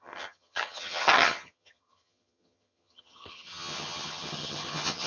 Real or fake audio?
fake